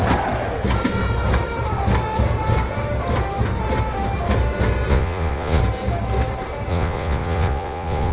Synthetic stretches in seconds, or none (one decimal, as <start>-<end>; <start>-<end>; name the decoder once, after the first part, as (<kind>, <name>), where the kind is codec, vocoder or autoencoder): 4.9-5.6 (vocoder, Vocos); 6.7-8.1